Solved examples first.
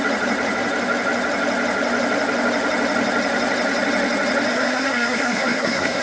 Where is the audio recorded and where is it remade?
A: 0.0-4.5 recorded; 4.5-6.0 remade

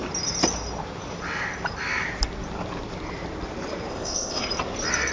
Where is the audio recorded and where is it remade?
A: 0.0-3.9 recorded; 3.9-4.4 remade; 4.4-5.1 recorded

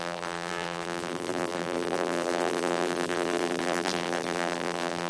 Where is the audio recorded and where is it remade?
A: 0.0-5.1 remade

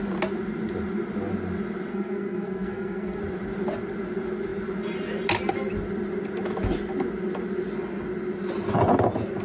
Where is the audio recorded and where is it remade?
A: 0.0-1.9 recorded; 1.9-3.2 remade; 3.2-9.4 recorded